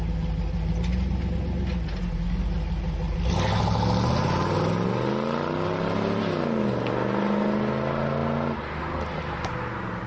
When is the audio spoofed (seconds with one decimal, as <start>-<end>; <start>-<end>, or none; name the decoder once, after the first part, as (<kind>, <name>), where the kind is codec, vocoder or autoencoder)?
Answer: none